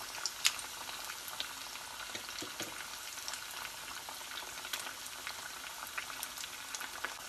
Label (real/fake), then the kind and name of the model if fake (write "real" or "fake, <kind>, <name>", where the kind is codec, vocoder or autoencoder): real